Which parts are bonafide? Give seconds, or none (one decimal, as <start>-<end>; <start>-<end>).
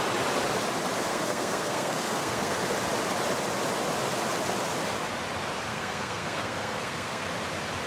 0.0-1.1; 2.6-5.7; 7.3-7.9